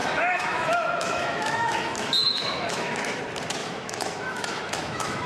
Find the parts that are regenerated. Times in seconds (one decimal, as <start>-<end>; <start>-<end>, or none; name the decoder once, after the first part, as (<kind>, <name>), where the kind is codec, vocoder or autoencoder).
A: 0.0-3.2 (autoencoder, DAC-VAE); 3.6-5.3